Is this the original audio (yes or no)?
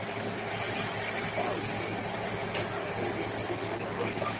yes